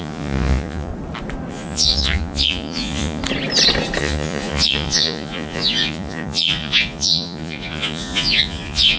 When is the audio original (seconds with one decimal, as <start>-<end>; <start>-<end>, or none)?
0.9-1.5; 3.2-4.0